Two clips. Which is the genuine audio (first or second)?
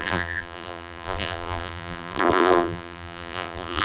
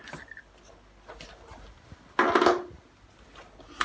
second